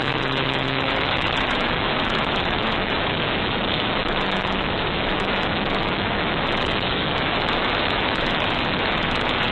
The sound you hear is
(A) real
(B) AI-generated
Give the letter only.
B